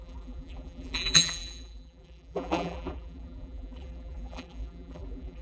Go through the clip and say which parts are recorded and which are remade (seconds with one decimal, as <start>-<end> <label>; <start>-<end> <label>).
0.0-5.4 remade

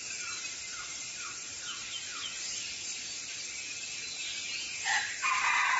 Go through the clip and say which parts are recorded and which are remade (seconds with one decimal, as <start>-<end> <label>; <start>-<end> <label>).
0.0-5.8 recorded

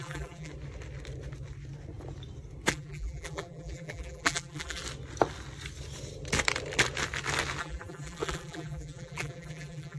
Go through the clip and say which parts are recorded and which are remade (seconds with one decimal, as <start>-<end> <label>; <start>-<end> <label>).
0.0-0.5 remade; 0.5-2.7 recorded; 2.7-4.8 remade; 4.8-7.6 recorded; 7.6-10.0 remade

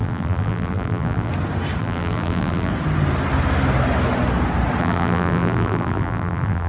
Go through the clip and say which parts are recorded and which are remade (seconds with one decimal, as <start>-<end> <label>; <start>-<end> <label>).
0.0-1.3 remade; 1.3-1.8 recorded; 1.8-2.7 remade; 2.7-4.8 recorded; 4.8-6.7 remade

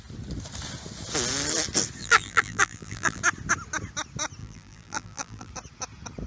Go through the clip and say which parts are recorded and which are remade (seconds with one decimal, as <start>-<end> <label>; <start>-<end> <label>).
0.0-2.0 recorded; 2.0-3.2 remade; 3.2-4.4 recorded; 4.4-5.5 remade; 5.5-6.3 recorded

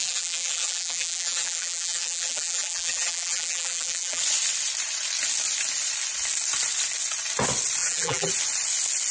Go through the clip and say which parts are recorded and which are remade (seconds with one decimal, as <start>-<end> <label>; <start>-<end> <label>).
0.0-4.2 remade; 4.2-7.8 recorded; 7.8-8.3 remade; 8.3-9.1 recorded